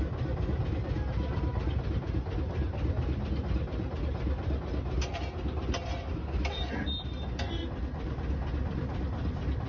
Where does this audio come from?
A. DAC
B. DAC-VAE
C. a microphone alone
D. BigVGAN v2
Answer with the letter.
C